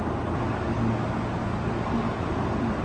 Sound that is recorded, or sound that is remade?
recorded